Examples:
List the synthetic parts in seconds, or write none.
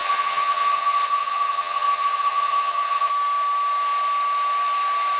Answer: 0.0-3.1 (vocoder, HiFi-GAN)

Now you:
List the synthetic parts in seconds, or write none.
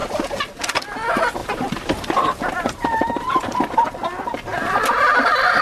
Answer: 0.0-0.6 (vocoder, BigVGAN v2); 1.4-3.3